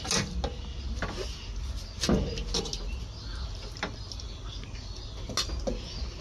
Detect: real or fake real